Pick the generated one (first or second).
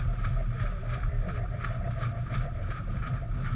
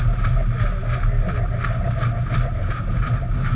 first